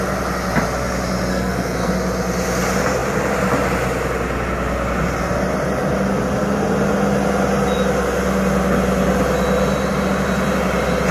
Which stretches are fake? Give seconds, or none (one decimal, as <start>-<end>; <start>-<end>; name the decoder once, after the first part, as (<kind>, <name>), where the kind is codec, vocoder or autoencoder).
1.3-1.9 (codec, SNAC)